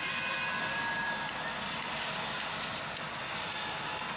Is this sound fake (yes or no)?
no